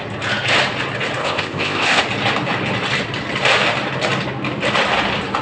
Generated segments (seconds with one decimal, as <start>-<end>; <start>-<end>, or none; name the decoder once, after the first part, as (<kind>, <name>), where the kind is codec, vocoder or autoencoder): 1.2-2.0 (codec, ZipCodec)